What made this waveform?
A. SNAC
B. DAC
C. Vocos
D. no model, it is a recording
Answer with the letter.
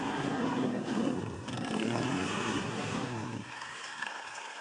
A